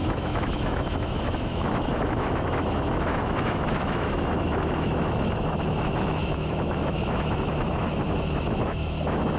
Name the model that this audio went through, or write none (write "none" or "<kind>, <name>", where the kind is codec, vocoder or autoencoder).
autoencoder, DAC-VAE